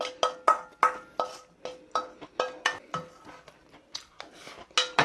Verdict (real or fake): real